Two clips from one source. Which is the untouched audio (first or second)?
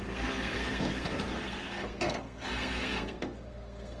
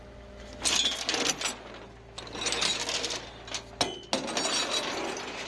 second